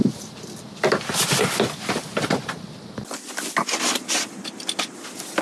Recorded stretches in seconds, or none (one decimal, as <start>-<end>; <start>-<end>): 0.0-5.4